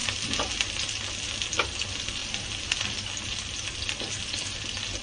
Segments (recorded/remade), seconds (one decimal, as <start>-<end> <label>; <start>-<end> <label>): 0.0-5.0 recorded